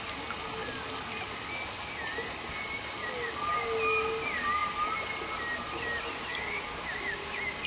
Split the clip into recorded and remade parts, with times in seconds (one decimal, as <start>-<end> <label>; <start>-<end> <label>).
0.0-7.7 recorded